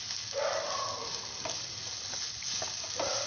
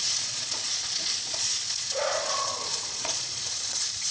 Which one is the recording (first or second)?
first